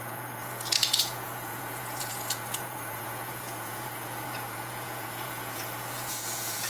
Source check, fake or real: fake